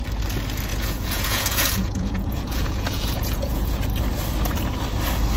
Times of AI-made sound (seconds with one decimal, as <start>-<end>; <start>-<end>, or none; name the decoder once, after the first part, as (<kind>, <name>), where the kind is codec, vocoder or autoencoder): 0.7-3.8 (vocoder, Vocos)